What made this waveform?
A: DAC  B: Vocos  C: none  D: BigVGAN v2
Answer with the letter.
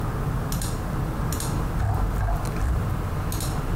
C